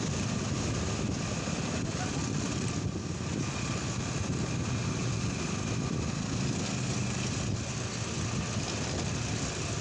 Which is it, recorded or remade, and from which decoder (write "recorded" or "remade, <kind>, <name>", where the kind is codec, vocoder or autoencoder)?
recorded